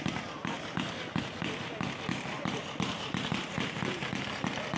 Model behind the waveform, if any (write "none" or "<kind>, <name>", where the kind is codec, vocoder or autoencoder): none